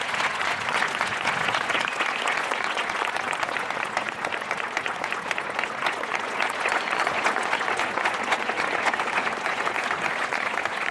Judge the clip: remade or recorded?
remade